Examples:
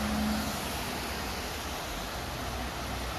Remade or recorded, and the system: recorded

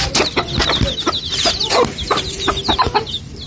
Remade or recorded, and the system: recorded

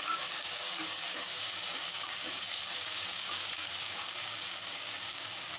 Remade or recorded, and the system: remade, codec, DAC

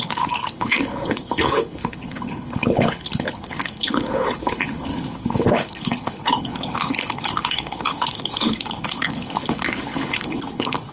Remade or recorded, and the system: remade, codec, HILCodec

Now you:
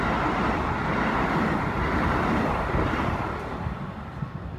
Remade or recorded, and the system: recorded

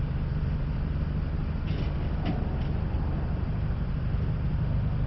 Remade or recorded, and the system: recorded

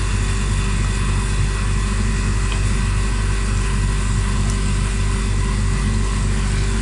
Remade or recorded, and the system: recorded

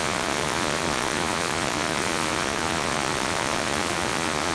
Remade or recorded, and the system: remade, vocoder, Vocos